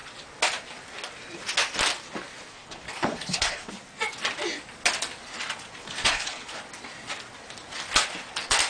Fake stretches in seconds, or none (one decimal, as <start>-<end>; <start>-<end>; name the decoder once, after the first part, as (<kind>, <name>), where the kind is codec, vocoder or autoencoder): 2.5-3.7 (codec, HILCodec); 5.8-6.6